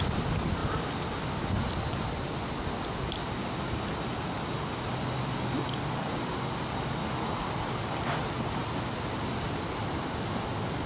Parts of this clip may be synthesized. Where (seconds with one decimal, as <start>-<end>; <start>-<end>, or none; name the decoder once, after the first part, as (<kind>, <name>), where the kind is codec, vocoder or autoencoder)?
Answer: none